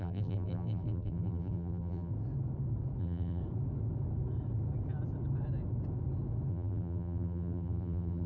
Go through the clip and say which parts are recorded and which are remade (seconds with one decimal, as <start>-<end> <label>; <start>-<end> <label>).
0.0-2.1 remade; 2.1-3.0 recorded; 3.0-3.4 remade; 3.4-6.5 recorded; 6.5-8.3 remade